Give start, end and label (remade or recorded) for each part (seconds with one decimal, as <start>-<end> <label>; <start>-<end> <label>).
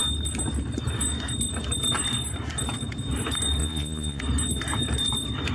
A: 0.0-3.6 recorded; 3.6-4.2 remade; 4.2-5.5 recorded